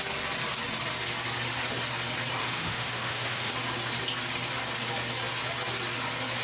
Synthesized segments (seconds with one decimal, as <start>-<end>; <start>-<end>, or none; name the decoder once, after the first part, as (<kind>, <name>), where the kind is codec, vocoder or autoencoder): 2.4-3.5 (autoencoder, DAC-VAE)